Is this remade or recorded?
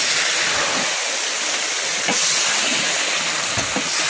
recorded